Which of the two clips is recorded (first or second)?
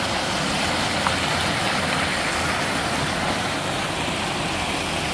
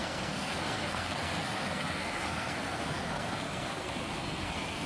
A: first